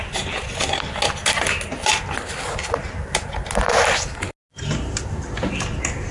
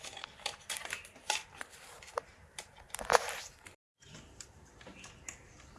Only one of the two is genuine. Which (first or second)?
first